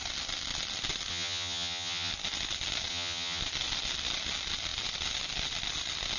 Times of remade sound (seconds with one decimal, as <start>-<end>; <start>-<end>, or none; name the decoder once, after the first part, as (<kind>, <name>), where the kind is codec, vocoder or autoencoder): 1.1-2.1 (vocoder, HiFi-GAN); 2.9-3.4